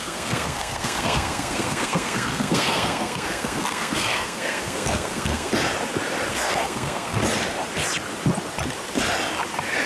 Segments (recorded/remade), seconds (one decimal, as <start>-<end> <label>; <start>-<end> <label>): 0.0-5.5 remade; 5.5-6.3 recorded; 6.3-7.2 remade; 7.2-9.9 recorded